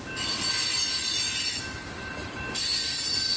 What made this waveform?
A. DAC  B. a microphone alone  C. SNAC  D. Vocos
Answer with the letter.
B